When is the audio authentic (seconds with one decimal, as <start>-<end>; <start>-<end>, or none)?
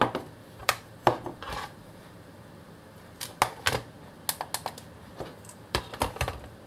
0.0-0.6; 3.4-5.3; 5.8-6.7